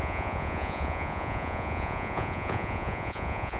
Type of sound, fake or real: fake